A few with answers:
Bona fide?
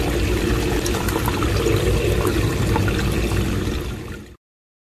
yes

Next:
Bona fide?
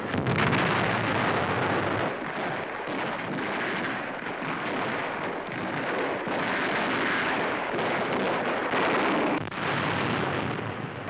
yes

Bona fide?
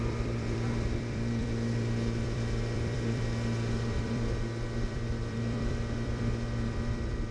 no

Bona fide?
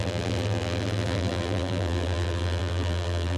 no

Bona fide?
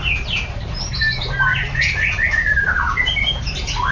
no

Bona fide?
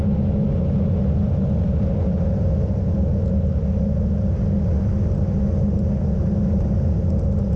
yes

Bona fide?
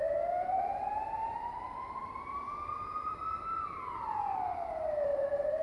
no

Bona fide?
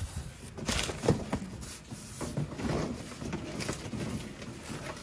yes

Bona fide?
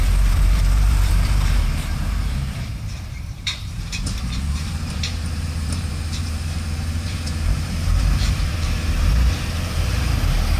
no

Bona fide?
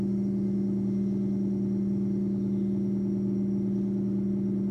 yes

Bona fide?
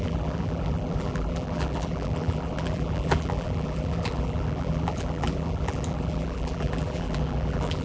no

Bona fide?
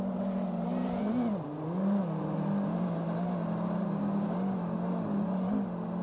yes